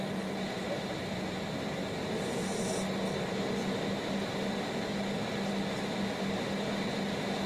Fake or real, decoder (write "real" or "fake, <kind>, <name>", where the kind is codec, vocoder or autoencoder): real